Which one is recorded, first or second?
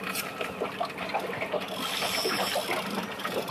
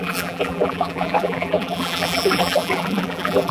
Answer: first